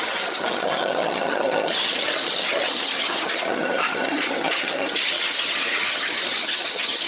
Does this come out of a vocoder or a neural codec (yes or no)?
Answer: yes